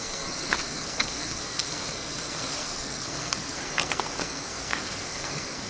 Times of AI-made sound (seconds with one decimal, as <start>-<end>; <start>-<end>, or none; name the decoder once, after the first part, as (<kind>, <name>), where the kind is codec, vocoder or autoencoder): 0.0-5.7 (codec, SNAC)